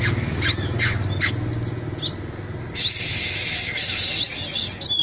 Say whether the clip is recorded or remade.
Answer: recorded